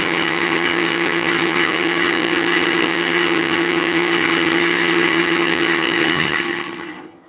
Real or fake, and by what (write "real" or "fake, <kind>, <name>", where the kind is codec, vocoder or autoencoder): fake, vocoder, HiFi-GAN